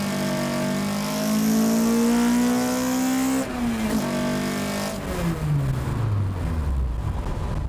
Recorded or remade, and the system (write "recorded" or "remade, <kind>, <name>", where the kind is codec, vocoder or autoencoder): recorded